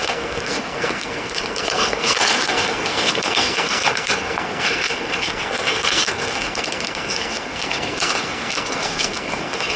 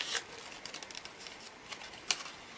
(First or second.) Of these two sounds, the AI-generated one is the first